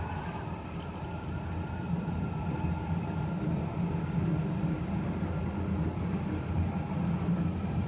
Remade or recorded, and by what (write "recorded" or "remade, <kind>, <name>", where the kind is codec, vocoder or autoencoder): recorded